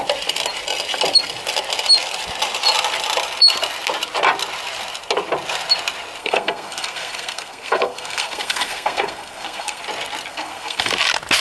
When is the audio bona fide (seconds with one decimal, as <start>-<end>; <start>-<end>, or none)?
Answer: 0.0-6.2; 9.8-10.3; 10.9-11.4